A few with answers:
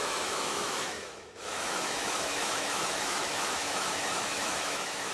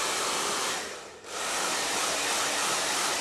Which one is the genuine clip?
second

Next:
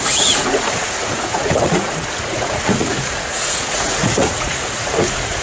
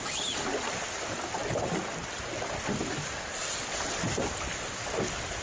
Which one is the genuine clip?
second